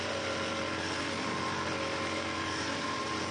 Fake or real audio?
fake